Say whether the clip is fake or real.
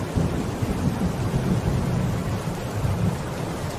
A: real